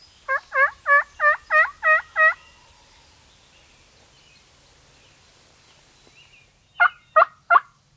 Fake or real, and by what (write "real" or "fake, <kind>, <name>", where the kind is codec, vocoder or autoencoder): real